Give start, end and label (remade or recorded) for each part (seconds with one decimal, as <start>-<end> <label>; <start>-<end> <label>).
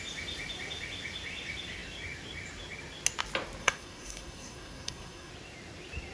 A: 0.0-3.6 recorded; 3.6-5.3 remade; 5.3-6.1 recorded